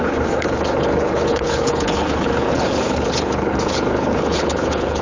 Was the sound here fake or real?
fake